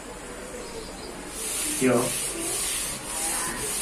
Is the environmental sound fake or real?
real